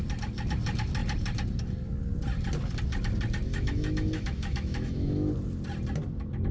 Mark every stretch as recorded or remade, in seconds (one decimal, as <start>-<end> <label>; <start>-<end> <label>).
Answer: 0.0-3.5 recorded; 3.5-5.3 remade; 5.3-6.5 recorded